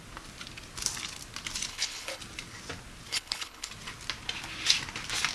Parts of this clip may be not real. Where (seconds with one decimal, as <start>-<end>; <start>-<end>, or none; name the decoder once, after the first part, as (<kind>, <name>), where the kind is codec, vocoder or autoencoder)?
1.7-2.2 (codec, HILCodec); 3.1-3.7